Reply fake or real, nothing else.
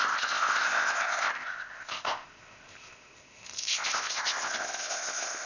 fake